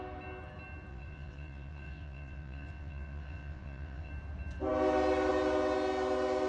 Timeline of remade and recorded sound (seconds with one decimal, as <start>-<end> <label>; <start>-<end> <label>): 0.0-0.9 recorded; 0.9-4.1 remade; 4.1-6.5 recorded